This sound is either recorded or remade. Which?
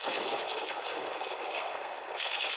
remade